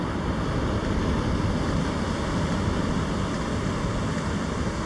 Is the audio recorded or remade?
recorded